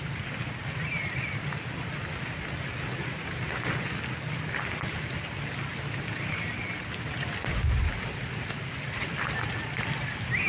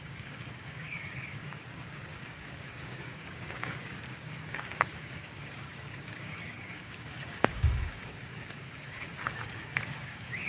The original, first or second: first